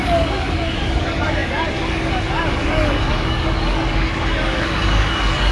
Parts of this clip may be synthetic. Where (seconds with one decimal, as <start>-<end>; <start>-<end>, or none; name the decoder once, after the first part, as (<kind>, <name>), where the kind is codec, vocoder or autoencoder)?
0.0-5.5 (codec, DAC)